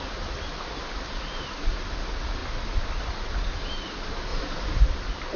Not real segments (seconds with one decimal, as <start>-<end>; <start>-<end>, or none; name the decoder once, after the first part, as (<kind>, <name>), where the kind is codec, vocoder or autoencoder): none

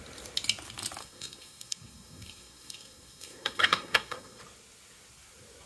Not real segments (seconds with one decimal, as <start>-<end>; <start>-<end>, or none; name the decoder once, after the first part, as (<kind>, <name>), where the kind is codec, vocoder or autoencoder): 1.0-4.4 (codec, SNAC)

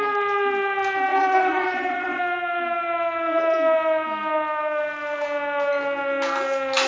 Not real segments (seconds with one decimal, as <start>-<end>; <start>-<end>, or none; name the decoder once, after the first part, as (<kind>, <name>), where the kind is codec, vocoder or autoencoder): 1.1-2.2 (vocoder, WaveNeXt)

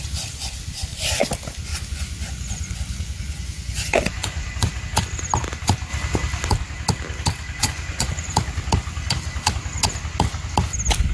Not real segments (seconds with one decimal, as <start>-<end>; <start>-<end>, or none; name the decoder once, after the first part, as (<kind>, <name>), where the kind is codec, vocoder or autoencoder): 1.7-4.8 (vocoder, Vocos); 7.6-8.3

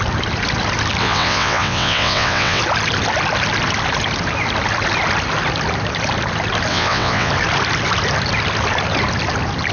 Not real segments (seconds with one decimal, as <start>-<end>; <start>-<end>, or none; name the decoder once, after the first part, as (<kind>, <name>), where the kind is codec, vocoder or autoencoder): 1.0-2.6 (vocoder, WaveNeXt); 6.7-7.3

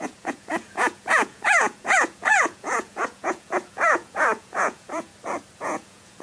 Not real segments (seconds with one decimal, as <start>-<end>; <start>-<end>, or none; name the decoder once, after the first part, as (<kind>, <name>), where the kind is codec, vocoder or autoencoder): 0.0-5.1 (vocoder, Vocos); 5.6-6.2

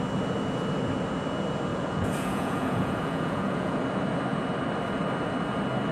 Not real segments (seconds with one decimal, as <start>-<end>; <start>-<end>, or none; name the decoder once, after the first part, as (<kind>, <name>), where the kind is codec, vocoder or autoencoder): 1.7-3.8 (vocoder, Vocos)

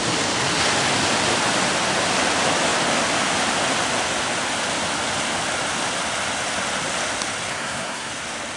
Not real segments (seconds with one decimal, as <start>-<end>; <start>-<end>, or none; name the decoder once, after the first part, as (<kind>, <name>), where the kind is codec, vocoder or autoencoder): 7.5-8.1 (codec, SNAC)